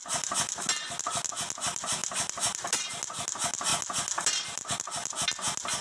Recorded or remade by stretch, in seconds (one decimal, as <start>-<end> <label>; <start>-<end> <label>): 0.0-5.8 recorded